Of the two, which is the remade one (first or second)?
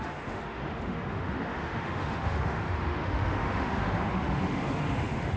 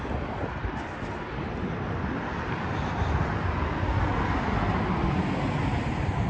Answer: first